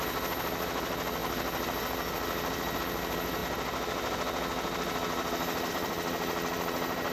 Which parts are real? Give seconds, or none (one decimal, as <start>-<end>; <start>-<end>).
0.0-7.1